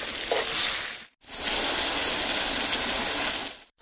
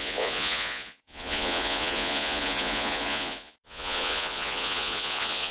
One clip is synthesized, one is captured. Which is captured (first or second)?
first